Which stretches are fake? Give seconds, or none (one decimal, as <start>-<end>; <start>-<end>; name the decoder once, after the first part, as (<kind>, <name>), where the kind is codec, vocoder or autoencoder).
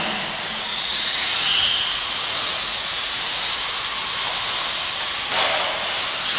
0.7-3.5 (vocoder, Vocos)